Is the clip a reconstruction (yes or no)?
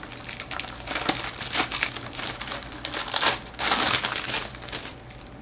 no